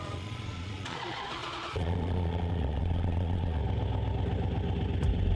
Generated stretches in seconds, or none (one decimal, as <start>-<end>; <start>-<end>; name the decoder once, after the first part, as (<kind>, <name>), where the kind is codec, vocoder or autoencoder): 0.0-3.6 (vocoder, Vocos)

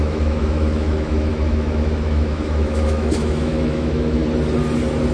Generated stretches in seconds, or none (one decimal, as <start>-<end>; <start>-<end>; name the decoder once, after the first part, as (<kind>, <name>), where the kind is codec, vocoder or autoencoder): 0.0-4.2 (autoencoder, DAC-VAE)

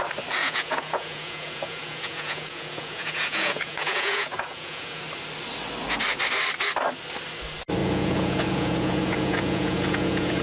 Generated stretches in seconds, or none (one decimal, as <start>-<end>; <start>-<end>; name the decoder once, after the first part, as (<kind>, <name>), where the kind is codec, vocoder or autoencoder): 0.4-5.0 (vocoder, Vocos); 7.8-10.4

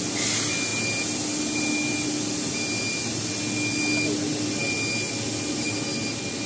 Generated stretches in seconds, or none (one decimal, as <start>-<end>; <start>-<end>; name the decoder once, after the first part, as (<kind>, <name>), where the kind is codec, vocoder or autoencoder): none

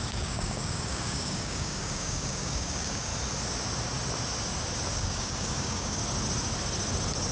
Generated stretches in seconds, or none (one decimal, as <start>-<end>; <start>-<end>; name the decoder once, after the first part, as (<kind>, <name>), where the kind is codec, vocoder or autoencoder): 0.0-3.1 (codec, DAC); 4.9-6.0

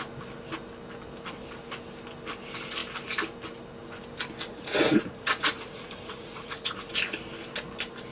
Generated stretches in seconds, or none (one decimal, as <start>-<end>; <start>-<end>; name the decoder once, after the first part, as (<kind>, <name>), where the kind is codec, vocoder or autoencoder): 4.5-6.9 (vocoder, Vocos)